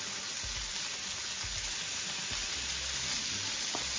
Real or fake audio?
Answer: real